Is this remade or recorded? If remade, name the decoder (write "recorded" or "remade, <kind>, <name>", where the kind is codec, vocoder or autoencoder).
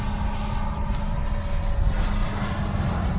recorded